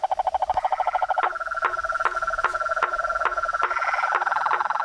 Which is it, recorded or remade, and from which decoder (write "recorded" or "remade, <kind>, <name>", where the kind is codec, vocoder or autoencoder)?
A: recorded